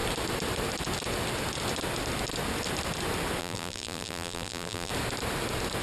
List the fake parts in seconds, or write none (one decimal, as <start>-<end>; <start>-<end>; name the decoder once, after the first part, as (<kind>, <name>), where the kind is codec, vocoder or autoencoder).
3.4-4.9 (vocoder, BigVGAN v2)